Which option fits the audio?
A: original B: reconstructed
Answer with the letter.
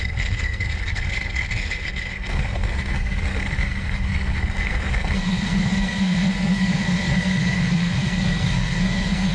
B